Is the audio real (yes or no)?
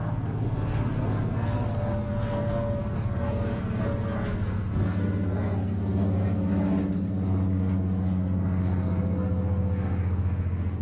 no